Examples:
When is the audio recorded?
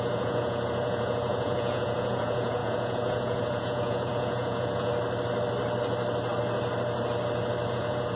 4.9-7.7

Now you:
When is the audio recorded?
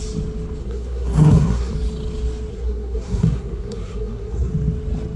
0.0-0.6; 1.7-2.5; 4.5-5.2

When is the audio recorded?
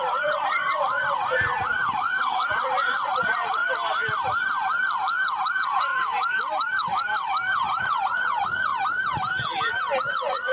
3.6-5.5; 5.9-7.8; 8.7-10.1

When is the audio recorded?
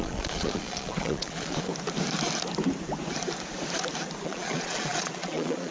1.7-4.2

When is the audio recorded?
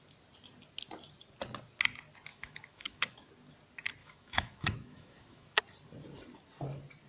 0.0-2.3; 3.3-4.0; 5.6-7.1